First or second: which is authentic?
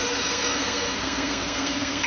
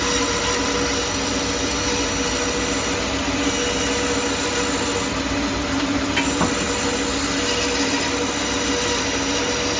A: second